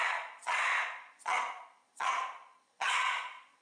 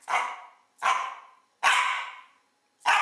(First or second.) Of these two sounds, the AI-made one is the first